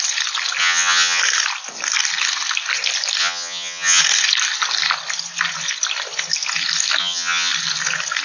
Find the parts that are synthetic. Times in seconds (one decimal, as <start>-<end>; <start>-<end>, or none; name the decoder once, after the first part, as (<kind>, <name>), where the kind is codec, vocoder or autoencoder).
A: 0.6-1.2 (vocoder, HiFi-GAN); 3.2-4.0; 7.0-7.5